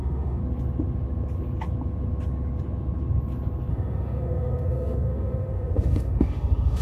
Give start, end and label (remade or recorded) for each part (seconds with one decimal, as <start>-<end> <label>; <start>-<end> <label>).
0.0-0.4 remade; 0.4-3.7 recorded; 3.7-6.8 remade